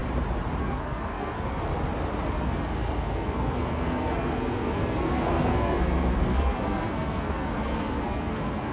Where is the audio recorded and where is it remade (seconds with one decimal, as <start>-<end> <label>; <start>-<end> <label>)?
0.0-0.6 recorded; 0.6-1.7 remade; 1.7-2.3 recorded; 2.3-8.7 remade